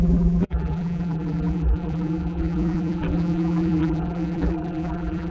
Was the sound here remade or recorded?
remade